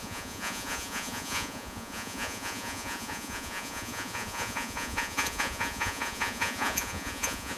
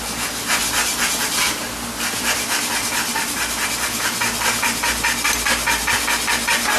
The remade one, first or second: first